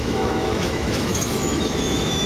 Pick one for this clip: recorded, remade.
remade